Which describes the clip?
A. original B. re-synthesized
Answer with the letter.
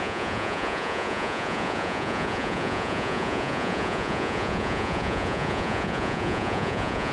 B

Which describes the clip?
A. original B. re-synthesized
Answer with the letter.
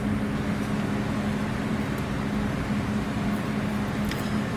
A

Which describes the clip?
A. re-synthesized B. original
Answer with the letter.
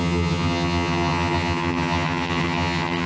A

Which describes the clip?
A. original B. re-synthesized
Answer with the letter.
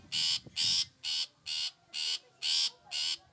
A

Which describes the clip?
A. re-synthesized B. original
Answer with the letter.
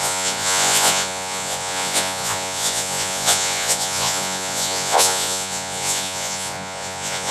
A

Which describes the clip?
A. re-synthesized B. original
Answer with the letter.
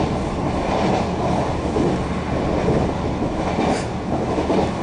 B